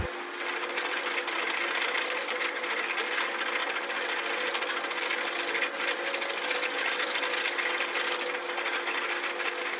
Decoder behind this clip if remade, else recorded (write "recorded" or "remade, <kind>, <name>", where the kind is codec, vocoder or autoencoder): recorded